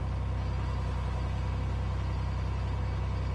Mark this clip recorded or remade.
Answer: recorded